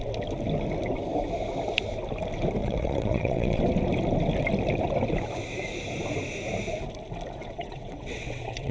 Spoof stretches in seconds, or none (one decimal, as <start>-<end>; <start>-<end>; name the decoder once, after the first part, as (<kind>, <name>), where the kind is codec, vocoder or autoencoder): 2.6-3.6 (vocoder, WaveNeXt); 7.4-8.7